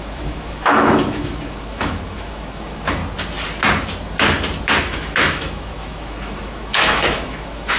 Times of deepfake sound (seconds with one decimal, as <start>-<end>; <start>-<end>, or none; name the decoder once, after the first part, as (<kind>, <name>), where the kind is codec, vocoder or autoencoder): 0.0-3.0 (autoencoder, DAC-VAE); 4.8-7.8